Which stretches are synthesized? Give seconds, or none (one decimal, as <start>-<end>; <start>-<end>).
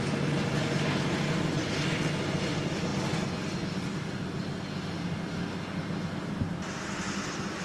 none